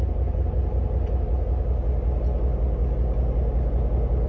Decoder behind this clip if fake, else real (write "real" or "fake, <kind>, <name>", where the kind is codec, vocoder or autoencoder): real